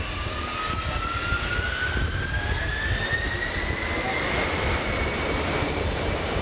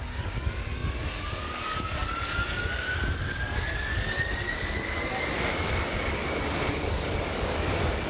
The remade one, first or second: second